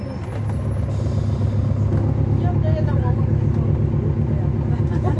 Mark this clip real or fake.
real